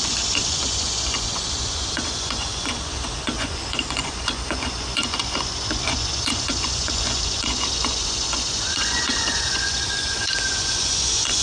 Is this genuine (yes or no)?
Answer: no